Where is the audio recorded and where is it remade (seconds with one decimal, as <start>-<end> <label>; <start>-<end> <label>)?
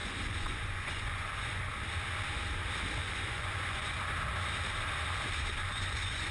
0.0-1.7 remade; 1.7-3.0 recorded; 3.0-4.1 remade; 4.1-5.5 recorded; 5.5-6.3 remade